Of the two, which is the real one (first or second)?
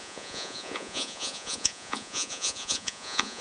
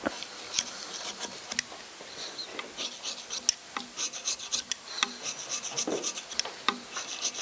second